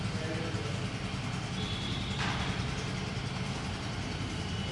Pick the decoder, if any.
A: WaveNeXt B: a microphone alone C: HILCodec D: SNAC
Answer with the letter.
B